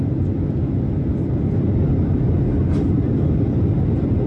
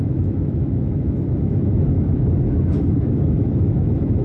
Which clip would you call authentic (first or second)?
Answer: first